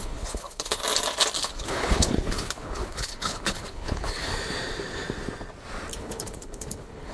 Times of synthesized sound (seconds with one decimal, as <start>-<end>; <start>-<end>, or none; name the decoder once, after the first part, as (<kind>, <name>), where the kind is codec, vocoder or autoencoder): 0.0-0.8 (codec, HILCodec); 1.4-4.3; 6.0-7.1